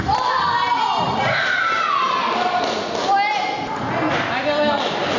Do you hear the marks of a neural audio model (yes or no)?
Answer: no